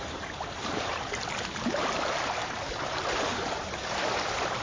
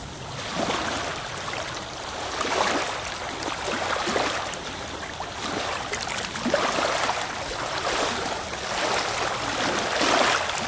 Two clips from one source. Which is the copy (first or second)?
first